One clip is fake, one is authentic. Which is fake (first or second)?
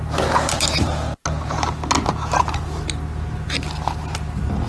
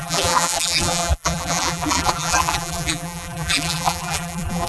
second